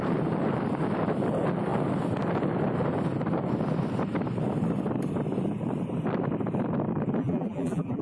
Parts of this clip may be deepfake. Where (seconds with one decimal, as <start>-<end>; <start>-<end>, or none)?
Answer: 7.2-8.0

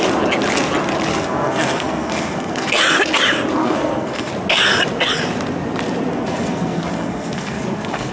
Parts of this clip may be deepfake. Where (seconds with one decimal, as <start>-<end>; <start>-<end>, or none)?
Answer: 1.1-2.8; 3.6-4.3; 6.1-8.1

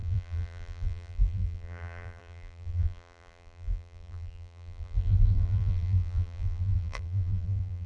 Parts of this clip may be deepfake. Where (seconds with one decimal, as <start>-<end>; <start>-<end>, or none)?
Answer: 0.0-7.9

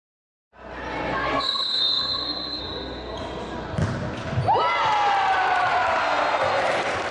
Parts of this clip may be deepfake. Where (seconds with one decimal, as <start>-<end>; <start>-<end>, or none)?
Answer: 1.2-2.6; 6.0-6.6

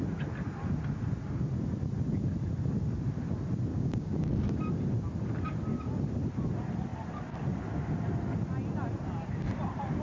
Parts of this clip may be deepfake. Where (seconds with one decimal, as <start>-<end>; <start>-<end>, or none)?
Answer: 3.7-4.3